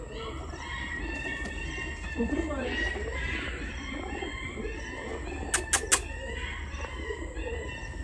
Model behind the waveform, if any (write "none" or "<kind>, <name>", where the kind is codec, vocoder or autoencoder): none